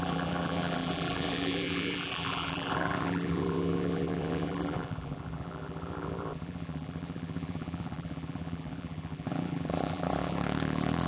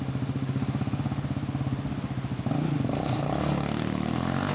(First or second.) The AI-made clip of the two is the first